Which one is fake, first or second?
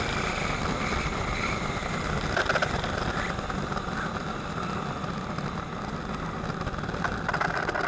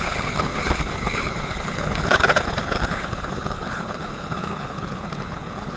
second